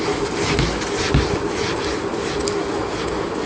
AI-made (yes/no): no